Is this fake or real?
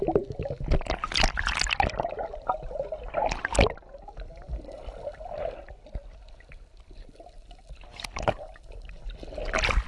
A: real